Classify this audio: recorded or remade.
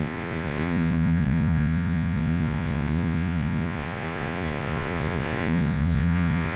remade